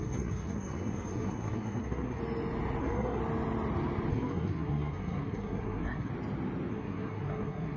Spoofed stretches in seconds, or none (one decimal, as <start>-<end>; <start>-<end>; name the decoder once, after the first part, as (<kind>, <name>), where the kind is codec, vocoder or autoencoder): 0.0-2.2 (codec, SNAC); 2.8-3.2; 4.1-6.1; 6.7-7.8